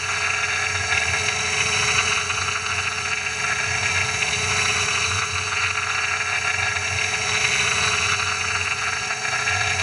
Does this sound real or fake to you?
fake